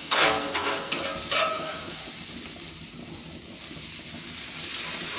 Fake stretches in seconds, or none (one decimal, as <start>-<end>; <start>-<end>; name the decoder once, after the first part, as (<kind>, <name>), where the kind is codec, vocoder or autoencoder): 0.0-1.0 (codec, SNAC); 1.5-2.0